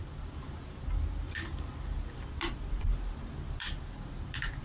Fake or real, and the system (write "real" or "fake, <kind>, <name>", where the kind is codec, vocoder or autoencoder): real